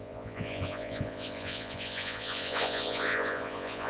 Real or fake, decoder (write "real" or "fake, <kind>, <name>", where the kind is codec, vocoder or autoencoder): fake, vocoder, Vocos